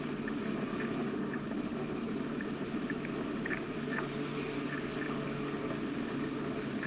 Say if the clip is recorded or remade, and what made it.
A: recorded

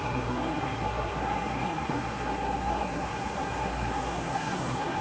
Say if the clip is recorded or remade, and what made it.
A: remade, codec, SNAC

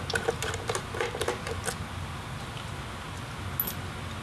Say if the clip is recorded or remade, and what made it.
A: recorded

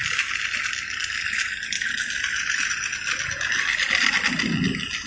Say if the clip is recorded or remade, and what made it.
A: recorded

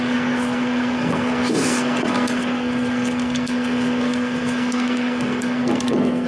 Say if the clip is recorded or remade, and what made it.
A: remade, codec, SNAC